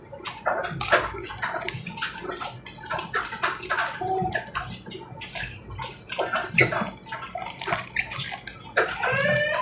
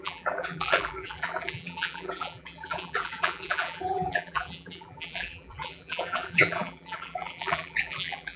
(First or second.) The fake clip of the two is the second